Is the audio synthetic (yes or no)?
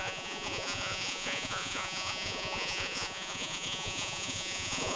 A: yes